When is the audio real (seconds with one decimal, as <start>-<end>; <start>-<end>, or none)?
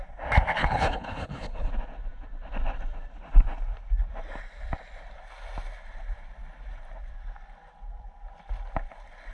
0.0-0.6; 1.7-9.3